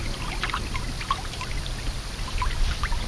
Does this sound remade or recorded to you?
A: remade